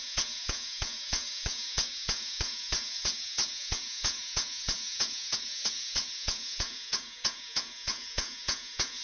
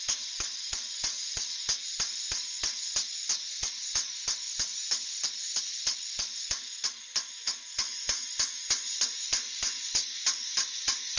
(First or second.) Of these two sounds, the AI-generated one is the first